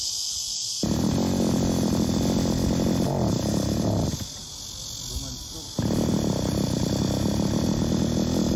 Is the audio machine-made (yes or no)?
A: no